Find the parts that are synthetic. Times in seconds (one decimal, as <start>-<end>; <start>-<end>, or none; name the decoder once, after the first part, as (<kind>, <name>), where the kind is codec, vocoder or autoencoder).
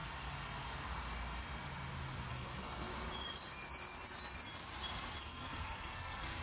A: 2.3-2.9 (codec, SNAC); 5.2-6.4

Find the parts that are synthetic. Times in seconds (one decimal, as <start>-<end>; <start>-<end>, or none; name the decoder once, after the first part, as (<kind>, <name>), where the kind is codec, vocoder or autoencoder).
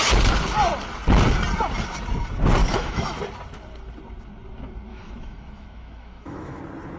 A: 2.6-3.2 (autoencoder, DAC-VAE); 4.9-6.6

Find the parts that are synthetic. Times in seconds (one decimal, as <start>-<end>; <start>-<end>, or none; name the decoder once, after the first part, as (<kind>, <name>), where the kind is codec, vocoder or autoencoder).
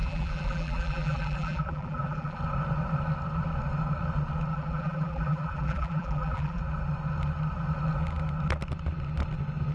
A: 0.0-2.4 (vocoder, BigVGAN v2); 4.5-6.6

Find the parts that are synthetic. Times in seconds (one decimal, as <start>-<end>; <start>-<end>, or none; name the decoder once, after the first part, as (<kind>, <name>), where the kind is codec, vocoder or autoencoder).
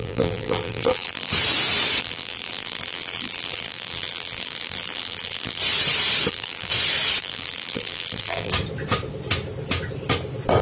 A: 0.0-1.3 (vocoder, BigVGAN v2); 2.0-5.6; 6.3-6.7; 7.2-8.5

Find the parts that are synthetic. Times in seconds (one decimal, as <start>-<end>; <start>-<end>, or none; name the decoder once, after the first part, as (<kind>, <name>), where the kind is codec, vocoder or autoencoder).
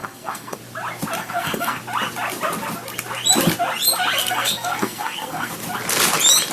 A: 0.0-0.6 (codec, SNAC); 1.2-1.8; 4.2-5.5